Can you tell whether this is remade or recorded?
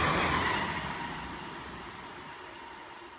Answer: recorded